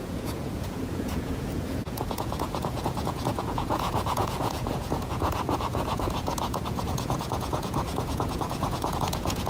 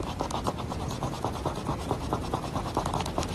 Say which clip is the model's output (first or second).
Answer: first